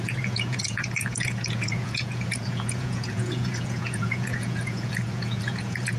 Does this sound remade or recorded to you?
remade